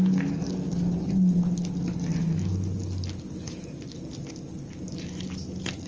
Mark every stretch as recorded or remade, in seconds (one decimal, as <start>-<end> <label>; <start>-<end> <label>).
0.0-5.9 recorded